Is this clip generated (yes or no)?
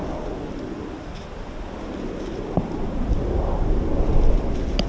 no